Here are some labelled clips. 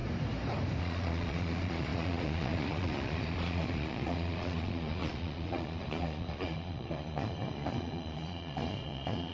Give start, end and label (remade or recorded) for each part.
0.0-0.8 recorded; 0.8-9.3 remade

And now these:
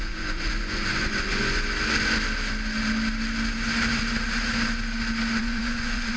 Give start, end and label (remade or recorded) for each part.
0.0-1.7 remade; 1.7-5.4 recorded; 5.4-6.2 remade

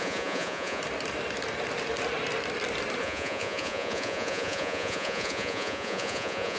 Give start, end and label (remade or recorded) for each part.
0.0-0.8 remade; 0.8-3.0 recorded; 3.0-6.6 remade

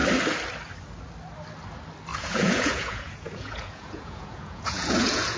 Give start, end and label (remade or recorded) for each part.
0.0-2.1 recorded; 2.1-5.4 remade